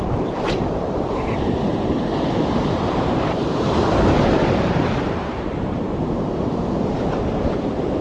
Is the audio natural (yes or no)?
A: no